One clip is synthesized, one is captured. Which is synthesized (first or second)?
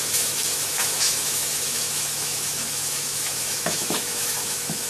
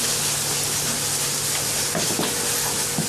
first